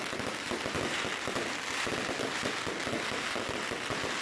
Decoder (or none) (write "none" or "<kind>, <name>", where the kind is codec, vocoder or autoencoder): vocoder, BigVGAN v2